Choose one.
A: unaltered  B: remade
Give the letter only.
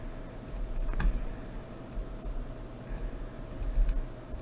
A